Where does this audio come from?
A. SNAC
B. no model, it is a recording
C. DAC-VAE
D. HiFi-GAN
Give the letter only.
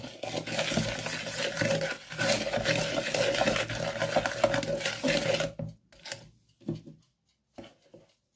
B